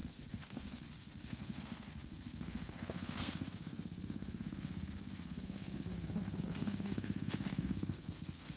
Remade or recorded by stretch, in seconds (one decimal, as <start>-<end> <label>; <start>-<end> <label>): 0.0-8.6 remade